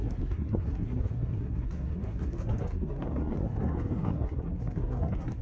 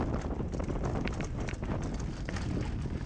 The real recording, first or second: second